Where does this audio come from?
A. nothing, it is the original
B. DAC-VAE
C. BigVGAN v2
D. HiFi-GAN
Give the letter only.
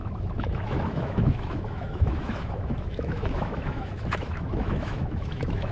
B